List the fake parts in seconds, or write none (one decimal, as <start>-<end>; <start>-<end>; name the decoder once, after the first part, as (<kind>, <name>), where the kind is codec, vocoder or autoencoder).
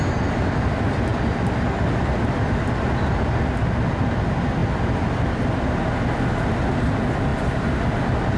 none